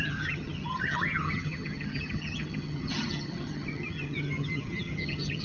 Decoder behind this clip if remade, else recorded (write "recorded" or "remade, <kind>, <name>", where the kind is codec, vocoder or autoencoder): remade, vocoder, HiFi-GAN